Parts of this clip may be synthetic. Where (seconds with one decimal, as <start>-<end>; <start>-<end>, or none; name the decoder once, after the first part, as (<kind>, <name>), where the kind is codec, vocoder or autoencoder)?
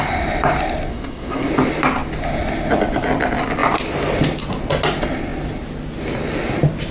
0.9-1.5 (codec, SNAC)